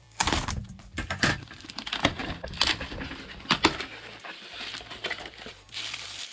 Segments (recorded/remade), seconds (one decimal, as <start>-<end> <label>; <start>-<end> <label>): 0.0-2.2 remade; 2.2-5.5 recorded; 5.5-6.3 remade